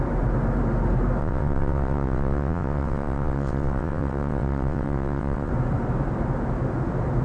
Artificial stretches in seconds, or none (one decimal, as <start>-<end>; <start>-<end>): 1.2-5.5